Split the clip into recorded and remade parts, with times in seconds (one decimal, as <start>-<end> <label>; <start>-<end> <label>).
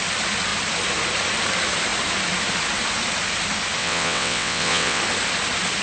0.0-3.8 recorded; 3.8-5.0 remade; 5.0-5.8 recorded